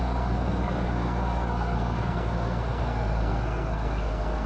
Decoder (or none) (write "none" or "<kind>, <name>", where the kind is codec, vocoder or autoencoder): codec, SNAC